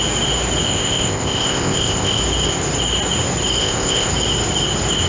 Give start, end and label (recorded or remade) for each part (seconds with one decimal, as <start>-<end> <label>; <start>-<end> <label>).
0.0-0.7 recorded; 0.7-2.2 remade; 2.2-3.6 recorded; 3.6-4.1 remade; 4.1-5.1 recorded